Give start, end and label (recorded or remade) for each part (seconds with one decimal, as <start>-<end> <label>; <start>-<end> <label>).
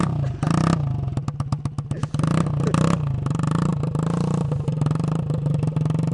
0.0-6.1 recorded